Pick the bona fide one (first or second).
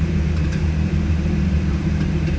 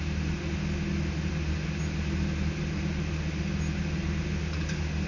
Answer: second